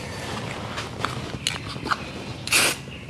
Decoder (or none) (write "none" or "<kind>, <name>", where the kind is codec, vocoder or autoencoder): none